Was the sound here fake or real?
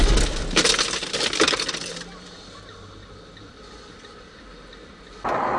real